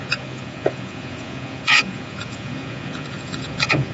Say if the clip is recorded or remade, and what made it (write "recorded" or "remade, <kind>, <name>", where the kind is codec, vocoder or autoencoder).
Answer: remade, vocoder, Vocos